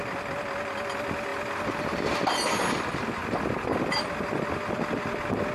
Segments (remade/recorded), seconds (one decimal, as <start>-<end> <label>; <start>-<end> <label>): 0.0-1.3 recorded; 1.3-2.0 remade; 2.0-3.2 recorded; 3.2-5.5 remade